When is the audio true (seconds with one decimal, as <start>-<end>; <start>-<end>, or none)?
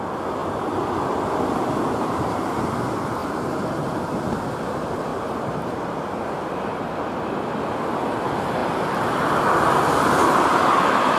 0.0-3.2; 4.0-5.1; 6.0-11.2